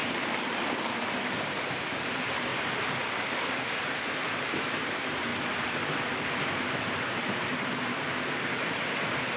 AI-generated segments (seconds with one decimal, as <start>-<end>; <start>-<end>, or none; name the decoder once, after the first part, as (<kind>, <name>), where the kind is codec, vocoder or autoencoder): 1.4-2.5 (vocoder, BigVGAN v2); 3.7-5.3; 6.5-9.4